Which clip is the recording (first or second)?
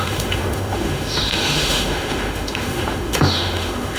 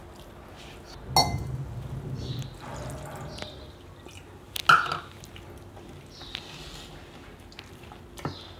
second